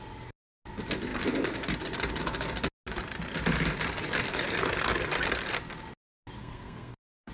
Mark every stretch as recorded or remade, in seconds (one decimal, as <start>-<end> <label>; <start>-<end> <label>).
0.0-6.4 recorded; 6.4-7.3 remade